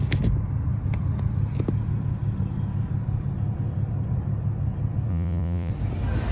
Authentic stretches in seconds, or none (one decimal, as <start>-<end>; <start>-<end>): 0.0-5.1; 5.7-6.3